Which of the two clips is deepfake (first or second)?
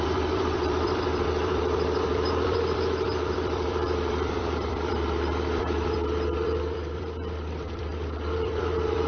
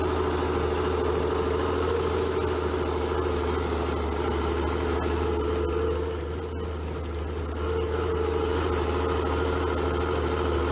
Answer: first